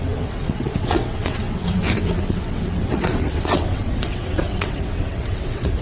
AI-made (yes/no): yes